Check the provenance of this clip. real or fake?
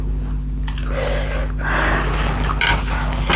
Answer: real